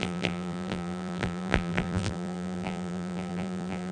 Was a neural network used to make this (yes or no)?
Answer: yes